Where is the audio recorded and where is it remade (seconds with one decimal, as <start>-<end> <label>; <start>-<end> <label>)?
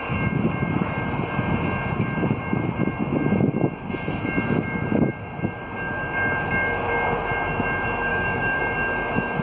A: 0.0-8.1 recorded; 8.1-8.6 remade; 8.6-9.4 recorded